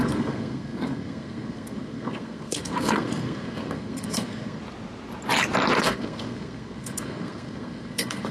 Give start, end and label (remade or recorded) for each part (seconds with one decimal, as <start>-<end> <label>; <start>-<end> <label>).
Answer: 0.0-4.6 remade; 4.6-5.8 recorded; 5.8-8.3 remade

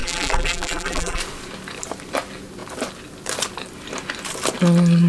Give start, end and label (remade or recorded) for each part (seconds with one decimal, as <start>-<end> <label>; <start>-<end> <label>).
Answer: 0.0-1.2 remade; 1.2-5.1 recorded

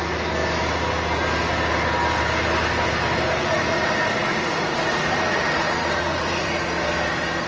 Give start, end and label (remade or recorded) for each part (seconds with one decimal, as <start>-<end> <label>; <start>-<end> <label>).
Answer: 0.0-3.4 recorded; 3.4-6.6 remade; 6.6-7.5 recorded